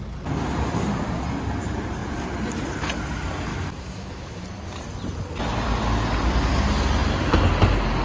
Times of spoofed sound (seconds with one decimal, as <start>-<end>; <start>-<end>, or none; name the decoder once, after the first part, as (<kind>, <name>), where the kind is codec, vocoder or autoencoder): 3.5-4.4 (autoencoder, DAC-VAE)